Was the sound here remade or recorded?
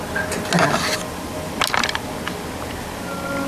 recorded